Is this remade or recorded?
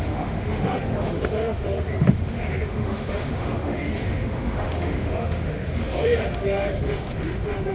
remade